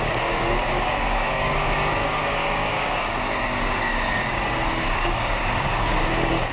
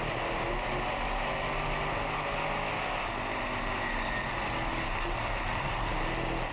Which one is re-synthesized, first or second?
first